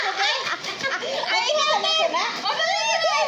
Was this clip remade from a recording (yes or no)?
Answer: no